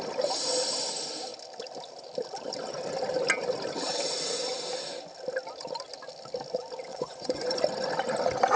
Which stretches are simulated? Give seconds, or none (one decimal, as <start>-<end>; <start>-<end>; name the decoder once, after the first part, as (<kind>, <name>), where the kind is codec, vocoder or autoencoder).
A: 6.9-7.6 (vocoder, Vocos)